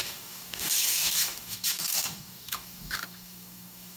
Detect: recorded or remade remade